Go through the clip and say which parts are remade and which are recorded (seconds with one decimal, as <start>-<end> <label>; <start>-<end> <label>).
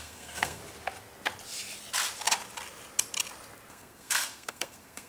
0.0-0.6 remade; 0.6-3.7 recorded; 3.7-5.1 remade